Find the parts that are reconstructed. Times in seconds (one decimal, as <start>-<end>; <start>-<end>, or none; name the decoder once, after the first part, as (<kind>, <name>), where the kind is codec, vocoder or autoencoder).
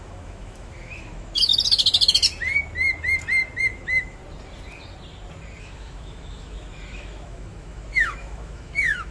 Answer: 0.0-1.5 (autoencoder, DAC-VAE); 3.6-4.2; 5.6-9.1